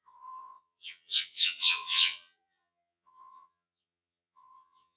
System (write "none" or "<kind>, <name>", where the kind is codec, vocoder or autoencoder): vocoder, Vocos